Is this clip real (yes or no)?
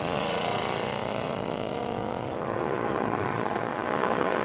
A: no